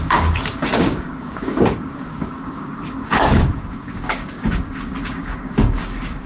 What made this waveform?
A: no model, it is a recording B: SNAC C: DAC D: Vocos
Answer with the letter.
C